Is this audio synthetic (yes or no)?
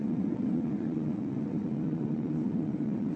yes